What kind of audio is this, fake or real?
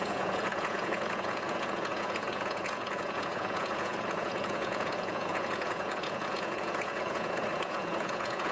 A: fake